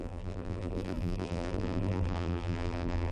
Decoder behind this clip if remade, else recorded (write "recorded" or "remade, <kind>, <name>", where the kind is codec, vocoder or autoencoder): remade, vocoder, BigVGAN v2